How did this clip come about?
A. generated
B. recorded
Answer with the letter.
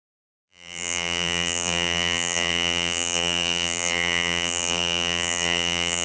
A